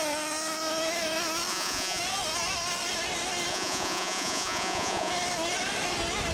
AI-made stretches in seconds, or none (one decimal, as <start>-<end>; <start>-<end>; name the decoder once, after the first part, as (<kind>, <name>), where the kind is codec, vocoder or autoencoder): 1.5-2.0 (vocoder, Vocos); 3.5-5.1